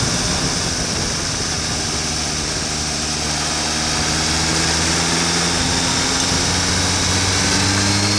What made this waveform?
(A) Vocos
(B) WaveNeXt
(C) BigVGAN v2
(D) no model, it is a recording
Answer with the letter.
D